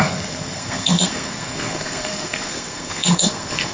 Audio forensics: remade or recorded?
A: remade